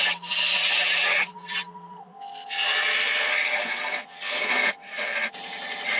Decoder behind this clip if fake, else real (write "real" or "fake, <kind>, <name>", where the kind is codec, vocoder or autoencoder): real